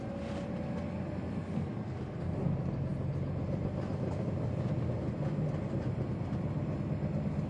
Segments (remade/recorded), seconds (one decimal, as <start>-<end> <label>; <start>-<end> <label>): 0.0-7.5 recorded